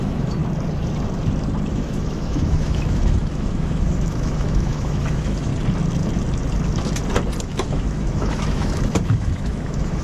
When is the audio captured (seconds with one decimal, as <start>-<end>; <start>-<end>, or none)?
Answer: 0.4-1.7; 5.5-7.4